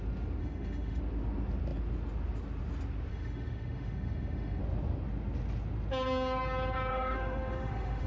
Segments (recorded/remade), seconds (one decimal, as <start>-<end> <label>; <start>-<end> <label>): 0.0-0.4 recorded; 0.4-1.0 remade; 1.0-3.1 recorded; 3.1-4.6 remade; 4.6-6.9 recorded; 6.9-8.1 remade